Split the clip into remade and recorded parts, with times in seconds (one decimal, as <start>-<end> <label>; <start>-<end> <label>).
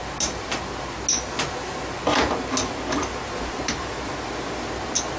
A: 0.0-5.2 recorded